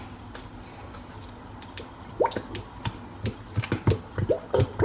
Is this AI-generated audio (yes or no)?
no